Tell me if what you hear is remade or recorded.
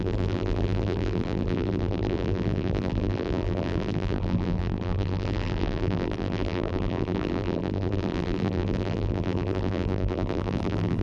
remade